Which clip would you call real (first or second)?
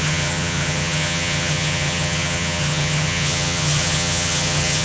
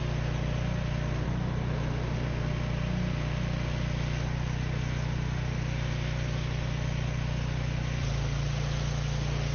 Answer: second